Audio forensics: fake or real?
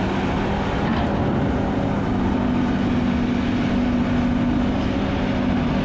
real